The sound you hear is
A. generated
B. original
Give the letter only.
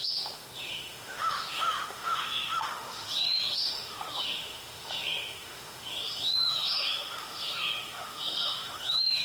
A